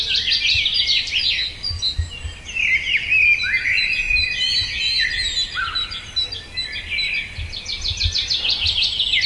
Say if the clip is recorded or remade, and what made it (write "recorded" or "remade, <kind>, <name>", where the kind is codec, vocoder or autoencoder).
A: recorded